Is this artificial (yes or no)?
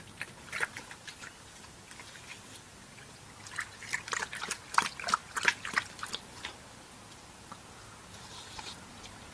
no